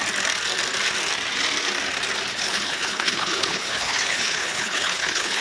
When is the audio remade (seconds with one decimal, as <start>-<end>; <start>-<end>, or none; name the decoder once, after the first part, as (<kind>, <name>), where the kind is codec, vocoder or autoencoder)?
2.3-5.4 (codec, HILCodec)